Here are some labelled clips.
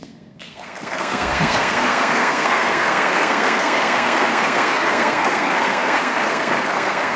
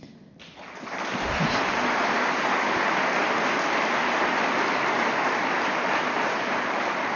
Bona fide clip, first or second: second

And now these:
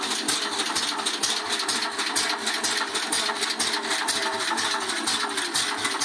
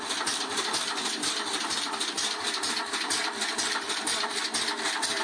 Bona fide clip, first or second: first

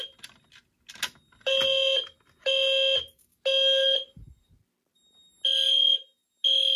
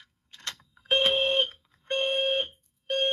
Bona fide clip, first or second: first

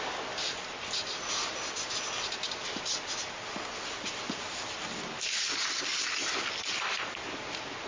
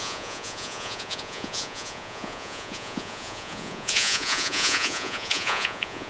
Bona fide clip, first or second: first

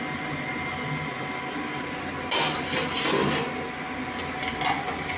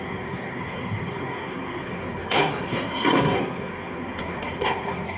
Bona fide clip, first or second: first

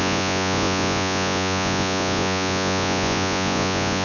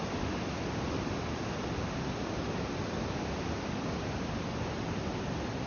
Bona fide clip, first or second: second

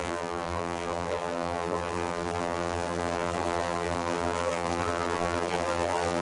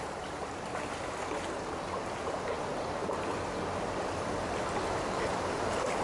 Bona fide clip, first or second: second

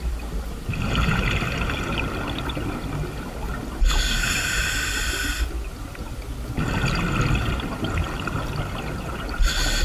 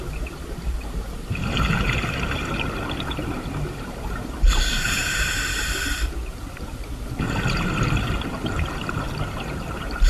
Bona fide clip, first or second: first